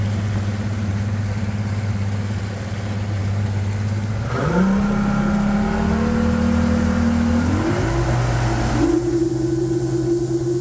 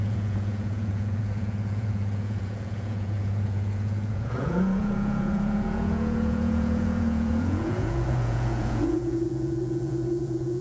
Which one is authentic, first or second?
first